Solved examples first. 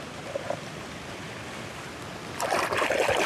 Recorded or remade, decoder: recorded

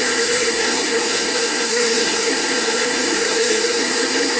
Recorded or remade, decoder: remade, codec, SNAC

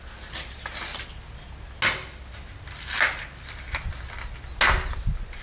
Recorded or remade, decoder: recorded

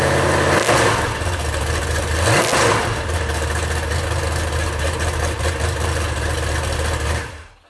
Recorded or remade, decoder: recorded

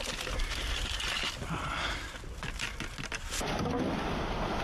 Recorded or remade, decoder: recorded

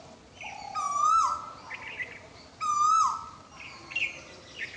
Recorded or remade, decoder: recorded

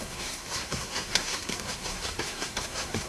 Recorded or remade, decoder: remade, codec, SNAC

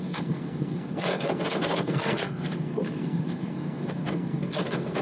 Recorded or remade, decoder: remade, codec, SNAC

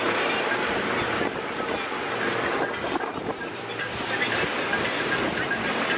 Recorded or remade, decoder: recorded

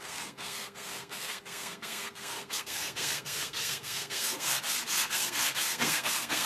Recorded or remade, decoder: remade, codec, SNAC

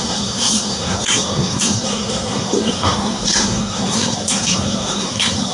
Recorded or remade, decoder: remade, codec, SNAC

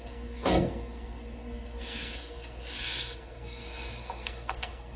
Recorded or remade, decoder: remade, codec, SNAC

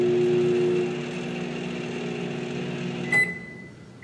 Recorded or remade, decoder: recorded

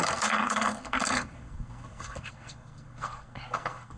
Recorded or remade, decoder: remade, codec, SNAC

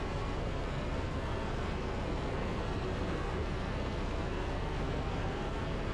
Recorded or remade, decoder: remade, codec, SNAC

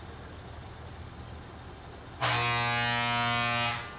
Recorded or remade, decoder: recorded